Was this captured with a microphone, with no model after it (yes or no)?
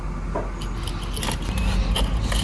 yes